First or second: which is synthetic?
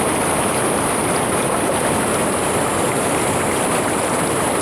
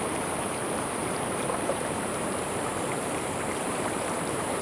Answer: second